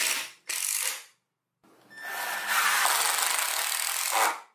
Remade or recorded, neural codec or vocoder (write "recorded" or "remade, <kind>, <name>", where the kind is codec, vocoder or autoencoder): recorded